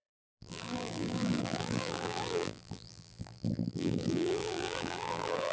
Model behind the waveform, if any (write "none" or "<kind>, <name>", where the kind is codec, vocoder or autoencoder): vocoder, BigVGAN v2